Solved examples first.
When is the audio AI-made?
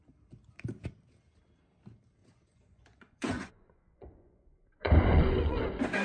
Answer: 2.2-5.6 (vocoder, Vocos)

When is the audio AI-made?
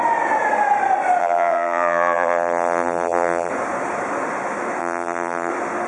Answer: 1.2-3.5 (vocoder, BigVGAN v2); 4.8-5.5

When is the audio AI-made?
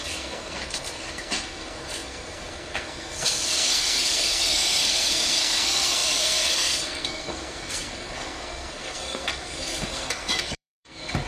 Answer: 0.0-11.3 (codec, SNAC)